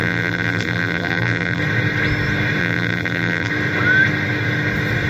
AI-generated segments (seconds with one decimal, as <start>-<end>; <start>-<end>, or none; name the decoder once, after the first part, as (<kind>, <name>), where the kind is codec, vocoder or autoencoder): 0.0-1.6 (vocoder, BigVGAN v2); 2.6-3.5